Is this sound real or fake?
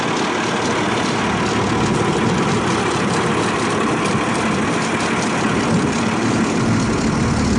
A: real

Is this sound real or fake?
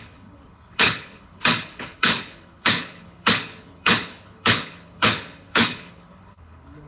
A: fake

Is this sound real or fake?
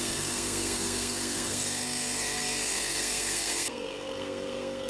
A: fake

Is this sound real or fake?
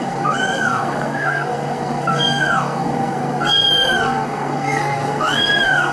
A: fake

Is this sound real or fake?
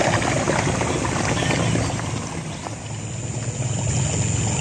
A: real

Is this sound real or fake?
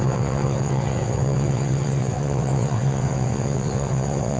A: fake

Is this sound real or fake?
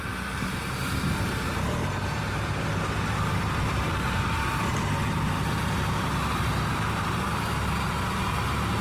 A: fake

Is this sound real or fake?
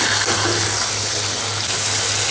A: real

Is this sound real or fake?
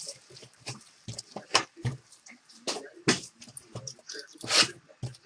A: fake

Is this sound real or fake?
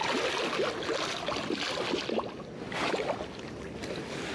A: real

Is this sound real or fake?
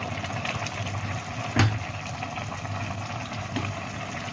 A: real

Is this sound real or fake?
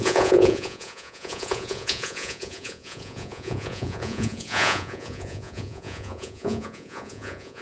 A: fake